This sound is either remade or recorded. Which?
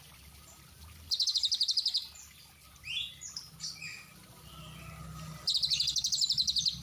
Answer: remade